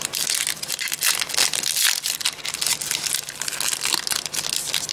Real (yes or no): yes